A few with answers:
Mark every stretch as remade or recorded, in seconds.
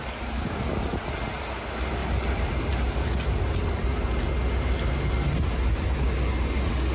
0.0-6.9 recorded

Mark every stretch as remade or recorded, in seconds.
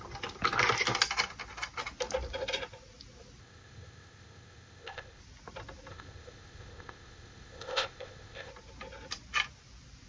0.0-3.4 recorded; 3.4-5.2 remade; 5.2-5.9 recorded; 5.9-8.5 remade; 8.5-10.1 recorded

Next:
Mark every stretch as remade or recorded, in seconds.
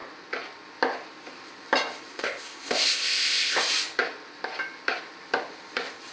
0.0-2.1 recorded; 2.1-3.6 remade; 3.6-6.1 recorded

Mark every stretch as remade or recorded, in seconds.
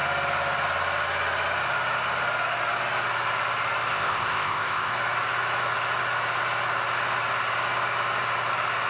0.0-3.9 recorded; 3.9-4.9 remade; 4.9-8.9 recorded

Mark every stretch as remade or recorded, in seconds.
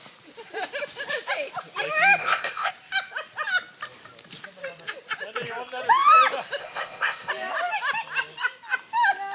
0.0-2.2 recorded; 2.2-2.7 remade; 2.7-6.6 recorded; 6.6-7.3 remade; 7.3-9.3 recorded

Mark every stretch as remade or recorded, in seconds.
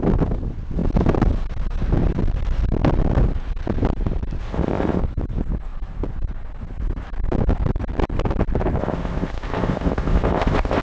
0.0-4.4 recorded; 4.4-5.0 remade; 5.0-8.8 recorded; 8.8-10.8 remade